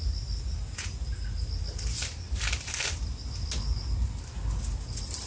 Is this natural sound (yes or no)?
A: yes